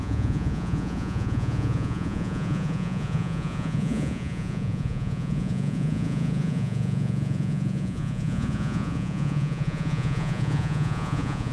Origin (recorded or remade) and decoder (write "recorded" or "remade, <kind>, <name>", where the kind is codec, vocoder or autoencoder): remade, vocoder, Vocos